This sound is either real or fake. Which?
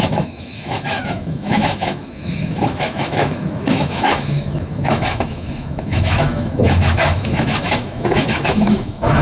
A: fake